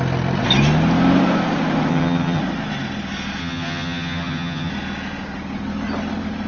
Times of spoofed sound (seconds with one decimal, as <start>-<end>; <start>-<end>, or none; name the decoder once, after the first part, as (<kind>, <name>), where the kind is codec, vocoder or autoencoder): 1.9-2.4 (vocoder, HiFi-GAN); 3.4-4.7